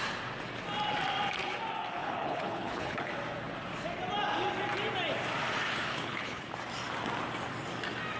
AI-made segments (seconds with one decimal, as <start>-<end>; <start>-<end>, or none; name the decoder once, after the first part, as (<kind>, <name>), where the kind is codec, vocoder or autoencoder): 2.0-3.1 (codec, HILCodec); 5.9-6.5